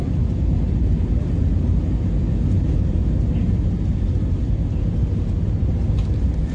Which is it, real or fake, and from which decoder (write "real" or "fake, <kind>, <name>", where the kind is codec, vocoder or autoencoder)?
real